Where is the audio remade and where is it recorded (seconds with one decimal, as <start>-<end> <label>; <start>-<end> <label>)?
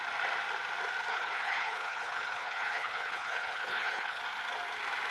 0.0-1.1 recorded; 1.1-4.2 remade; 4.2-5.1 recorded